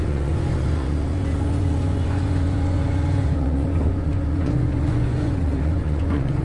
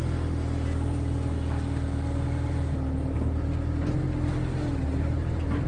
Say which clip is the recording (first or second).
second